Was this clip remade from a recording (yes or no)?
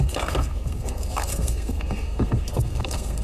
yes